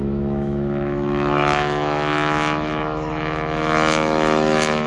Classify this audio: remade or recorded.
remade